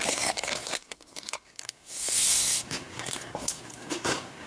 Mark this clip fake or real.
fake